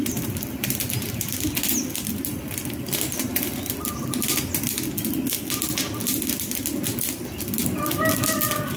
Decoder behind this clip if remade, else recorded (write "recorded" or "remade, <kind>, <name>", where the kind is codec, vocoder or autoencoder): recorded